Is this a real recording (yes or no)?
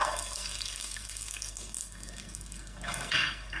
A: no